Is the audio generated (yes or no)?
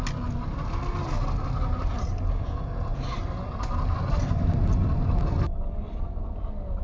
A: no